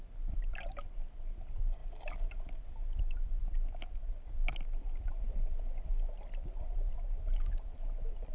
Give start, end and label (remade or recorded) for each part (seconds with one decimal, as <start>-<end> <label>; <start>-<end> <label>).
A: 0.0-8.3 recorded